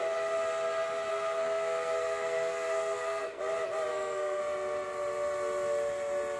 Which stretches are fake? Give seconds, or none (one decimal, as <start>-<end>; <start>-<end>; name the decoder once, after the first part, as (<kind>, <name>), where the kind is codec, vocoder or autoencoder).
1.1-3.4 (codec, SNAC); 3.9-4.4